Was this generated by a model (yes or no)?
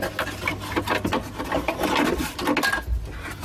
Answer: no